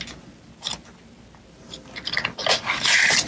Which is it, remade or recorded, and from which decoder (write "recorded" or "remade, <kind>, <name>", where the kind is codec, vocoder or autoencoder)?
recorded